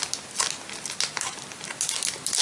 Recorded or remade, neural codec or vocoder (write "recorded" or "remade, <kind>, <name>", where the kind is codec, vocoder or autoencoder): recorded